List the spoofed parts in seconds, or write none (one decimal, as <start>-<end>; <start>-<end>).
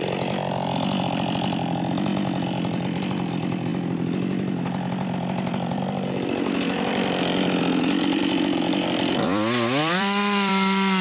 0.0-3.7; 5.5-11.0